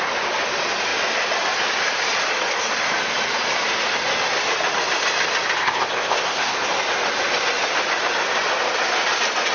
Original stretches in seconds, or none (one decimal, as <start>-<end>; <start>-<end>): 0.0-5.6; 6.6-9.5